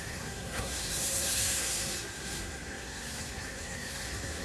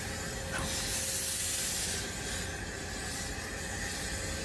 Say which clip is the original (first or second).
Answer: second